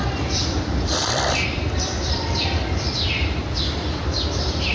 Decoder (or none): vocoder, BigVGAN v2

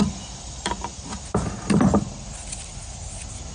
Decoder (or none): none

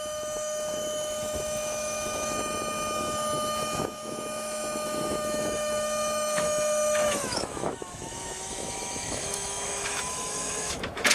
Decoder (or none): autoencoder, DAC-VAE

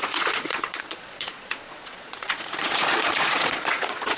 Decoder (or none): vocoder, Vocos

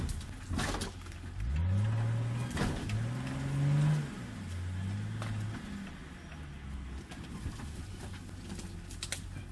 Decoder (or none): none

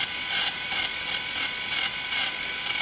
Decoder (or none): vocoder, BigVGAN v2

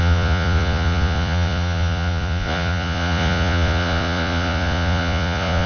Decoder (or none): vocoder, Vocos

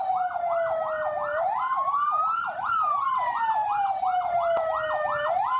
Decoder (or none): none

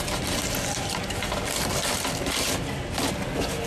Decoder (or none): none